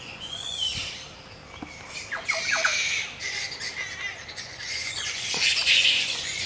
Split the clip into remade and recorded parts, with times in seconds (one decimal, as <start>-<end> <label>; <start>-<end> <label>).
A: 0.0-0.7 remade; 0.7-4.3 recorded; 4.3-6.5 remade